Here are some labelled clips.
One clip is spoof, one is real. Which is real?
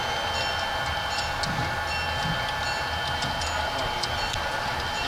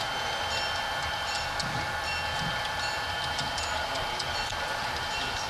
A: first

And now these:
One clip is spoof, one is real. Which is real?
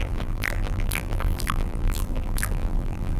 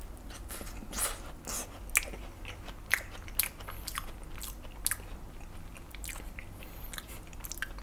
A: second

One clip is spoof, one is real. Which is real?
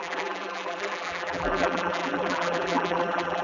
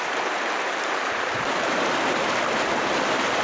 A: second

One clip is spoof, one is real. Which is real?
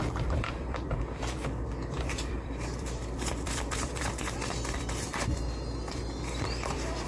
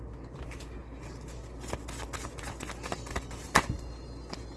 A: second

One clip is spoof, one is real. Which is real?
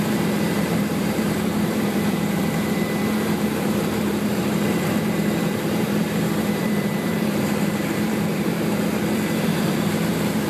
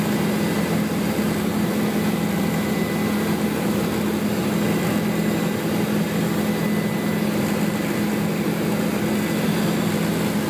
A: second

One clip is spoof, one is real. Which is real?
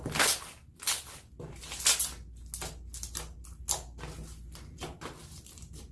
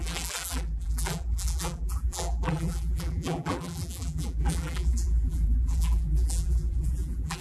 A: first